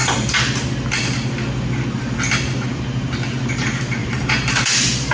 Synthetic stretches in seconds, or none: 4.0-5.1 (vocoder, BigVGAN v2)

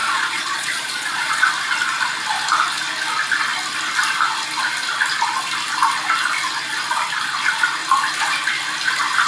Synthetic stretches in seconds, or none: 0.0-1.5 (vocoder, Vocos)